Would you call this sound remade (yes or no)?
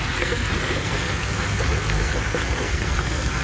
yes